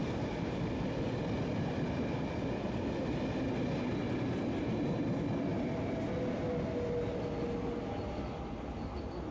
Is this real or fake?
real